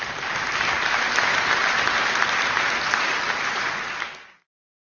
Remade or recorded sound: recorded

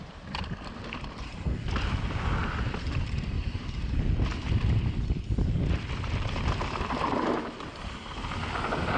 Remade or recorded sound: remade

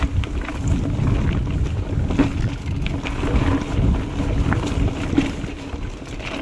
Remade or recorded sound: recorded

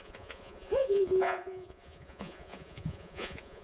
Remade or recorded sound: remade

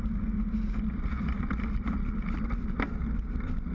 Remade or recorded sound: recorded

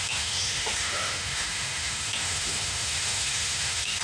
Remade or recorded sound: remade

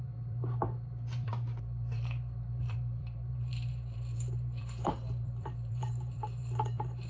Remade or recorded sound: remade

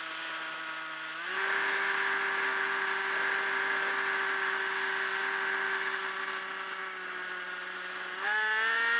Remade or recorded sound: recorded